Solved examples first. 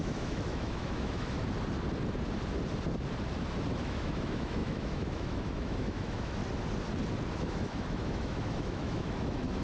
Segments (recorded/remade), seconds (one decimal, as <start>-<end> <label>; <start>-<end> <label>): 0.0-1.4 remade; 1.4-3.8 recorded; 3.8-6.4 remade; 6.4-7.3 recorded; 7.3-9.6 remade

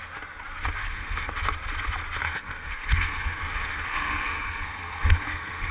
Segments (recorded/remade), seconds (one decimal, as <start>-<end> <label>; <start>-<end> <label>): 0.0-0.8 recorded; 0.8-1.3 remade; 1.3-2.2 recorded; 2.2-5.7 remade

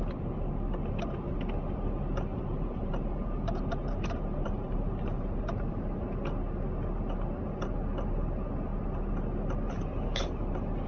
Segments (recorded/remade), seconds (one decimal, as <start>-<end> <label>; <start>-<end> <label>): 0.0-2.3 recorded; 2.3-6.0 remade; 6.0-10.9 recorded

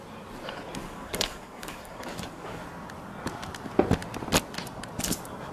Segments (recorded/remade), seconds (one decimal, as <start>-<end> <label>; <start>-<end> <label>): 0.0-0.8 recorded; 0.8-2.6 remade; 2.6-5.5 recorded